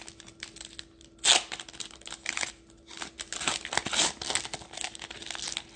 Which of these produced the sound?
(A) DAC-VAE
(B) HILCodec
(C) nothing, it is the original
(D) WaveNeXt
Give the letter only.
C